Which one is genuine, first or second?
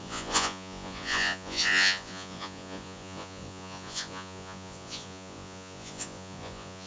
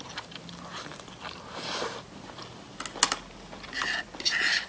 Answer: second